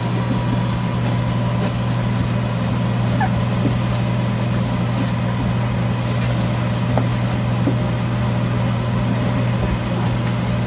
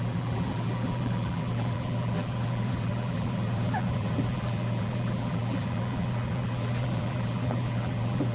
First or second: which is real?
first